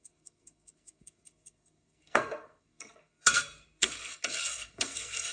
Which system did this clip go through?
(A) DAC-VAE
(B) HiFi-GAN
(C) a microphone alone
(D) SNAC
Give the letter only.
D